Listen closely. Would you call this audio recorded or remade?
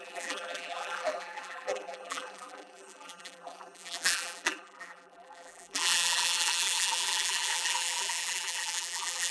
remade